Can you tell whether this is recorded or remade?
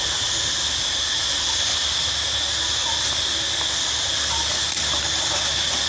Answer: recorded